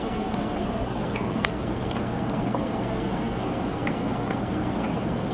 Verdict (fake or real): fake